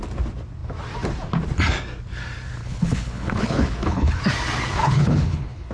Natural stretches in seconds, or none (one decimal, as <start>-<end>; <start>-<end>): 0.0-2.6; 4.2-4.8